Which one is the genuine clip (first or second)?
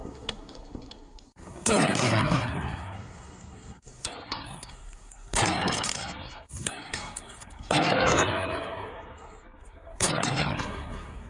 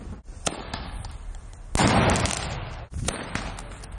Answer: second